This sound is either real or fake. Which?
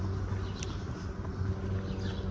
real